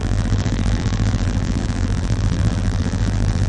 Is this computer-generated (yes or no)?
yes